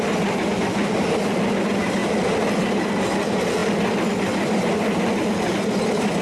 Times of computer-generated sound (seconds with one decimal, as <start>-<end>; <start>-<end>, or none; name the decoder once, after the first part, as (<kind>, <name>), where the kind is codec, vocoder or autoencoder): none